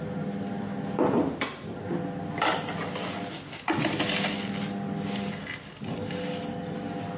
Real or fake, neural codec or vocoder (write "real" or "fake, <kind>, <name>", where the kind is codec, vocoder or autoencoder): real